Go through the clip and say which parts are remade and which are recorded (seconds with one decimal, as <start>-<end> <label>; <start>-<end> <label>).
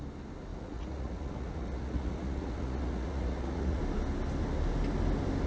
0.0-0.5 recorded; 0.5-3.8 remade; 3.8-5.5 recorded